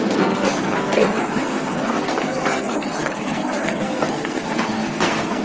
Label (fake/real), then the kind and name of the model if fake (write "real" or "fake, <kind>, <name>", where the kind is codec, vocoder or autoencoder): fake, codec, SNAC